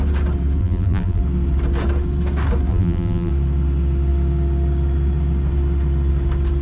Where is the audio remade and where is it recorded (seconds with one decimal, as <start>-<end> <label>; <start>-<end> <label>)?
0.0-0.6 recorded; 0.6-1.2 remade; 1.2-2.7 recorded; 2.7-3.3 remade; 3.3-6.6 recorded